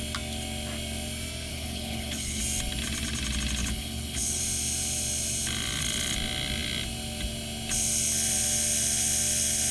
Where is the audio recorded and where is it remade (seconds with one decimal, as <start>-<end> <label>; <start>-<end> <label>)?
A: 0.0-1.5 recorded; 1.5-2.4 remade; 2.4-3.6 recorded; 3.6-4.4 remade; 4.4-9.7 recorded